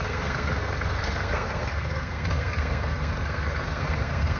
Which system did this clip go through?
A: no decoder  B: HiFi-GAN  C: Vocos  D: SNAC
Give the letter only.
D